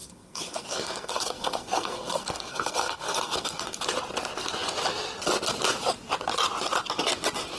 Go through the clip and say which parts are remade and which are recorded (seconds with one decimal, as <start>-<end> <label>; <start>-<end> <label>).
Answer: 0.0-3.8 remade; 3.8-7.6 recorded